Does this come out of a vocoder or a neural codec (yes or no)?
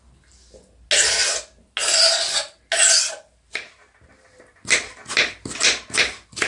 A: no